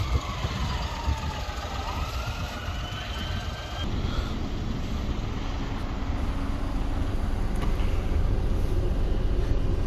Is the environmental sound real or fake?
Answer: real